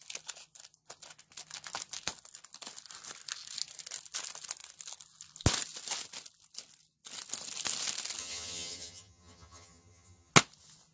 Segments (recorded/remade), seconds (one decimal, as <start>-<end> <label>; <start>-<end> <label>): 0.0-8.2 recorded; 8.2-10.3 remade; 10.3-10.9 recorded